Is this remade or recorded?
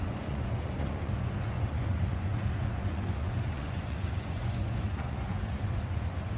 remade